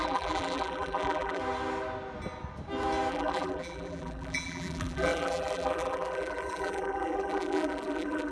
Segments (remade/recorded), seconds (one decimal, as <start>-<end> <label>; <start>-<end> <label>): 0.0-1.4 remade; 1.4-3.1 recorded; 3.1-8.3 remade